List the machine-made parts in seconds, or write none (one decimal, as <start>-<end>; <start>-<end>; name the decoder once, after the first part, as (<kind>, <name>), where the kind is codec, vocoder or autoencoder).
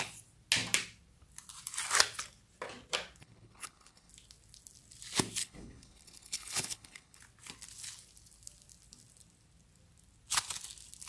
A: 3.2-4.1 (codec, HILCodec); 5.4-7.2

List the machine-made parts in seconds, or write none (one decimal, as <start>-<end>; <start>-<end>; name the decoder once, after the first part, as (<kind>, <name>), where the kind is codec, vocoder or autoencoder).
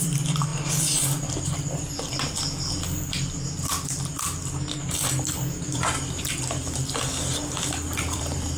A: 0.0-0.5 (vocoder, BigVGAN v2); 1.3-8.6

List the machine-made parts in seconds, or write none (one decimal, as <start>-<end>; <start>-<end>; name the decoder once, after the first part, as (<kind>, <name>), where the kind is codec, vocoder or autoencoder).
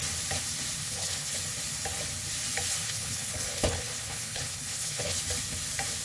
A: 0.8-1.4 (codec, HILCodec); 2.7-5.2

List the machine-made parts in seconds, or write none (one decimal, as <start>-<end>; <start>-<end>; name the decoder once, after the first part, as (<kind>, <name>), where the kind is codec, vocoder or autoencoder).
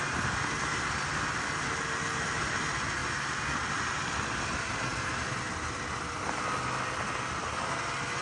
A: none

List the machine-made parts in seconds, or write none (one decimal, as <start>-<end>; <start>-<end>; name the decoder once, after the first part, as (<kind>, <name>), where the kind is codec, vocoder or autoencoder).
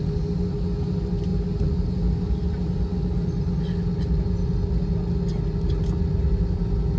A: none